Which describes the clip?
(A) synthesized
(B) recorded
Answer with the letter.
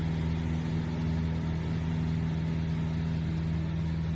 B